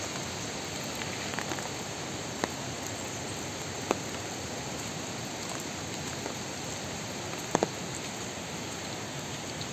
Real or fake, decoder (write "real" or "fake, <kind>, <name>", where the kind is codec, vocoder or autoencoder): real